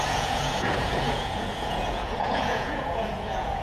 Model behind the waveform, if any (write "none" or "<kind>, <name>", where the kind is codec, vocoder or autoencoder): vocoder, Vocos